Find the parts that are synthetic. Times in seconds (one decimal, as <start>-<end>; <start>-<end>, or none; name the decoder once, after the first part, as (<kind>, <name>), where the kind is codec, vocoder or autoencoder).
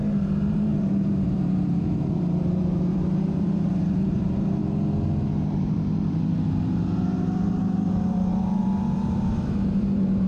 0.0-4.6 (vocoder, BigVGAN v2); 5.2-10.3